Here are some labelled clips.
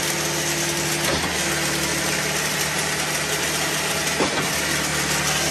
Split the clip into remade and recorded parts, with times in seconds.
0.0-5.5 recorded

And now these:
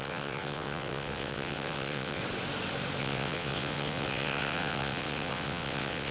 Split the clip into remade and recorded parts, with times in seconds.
0.0-2.2 remade; 2.2-3.0 recorded; 3.0-6.1 remade

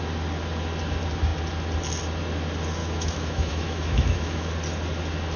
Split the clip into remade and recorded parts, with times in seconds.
0.0-2.8 recorded; 2.8-4.5 remade; 4.5-5.4 recorded

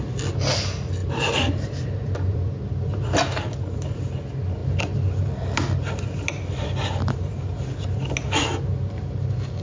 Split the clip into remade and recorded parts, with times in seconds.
0.0-1.0 recorded; 1.0-4.0 remade; 4.0-4.6 recorded; 4.6-5.2 remade; 5.2-9.6 recorded

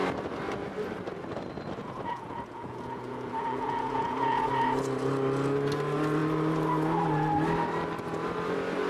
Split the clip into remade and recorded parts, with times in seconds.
0.0-1.8 recorded; 1.8-4.5 remade; 4.5-8.9 recorded

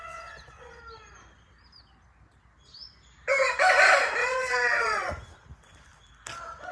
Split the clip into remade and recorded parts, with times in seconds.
0.0-0.8 remade; 0.8-4.2 recorded; 4.2-5.1 remade; 5.1-6.7 recorded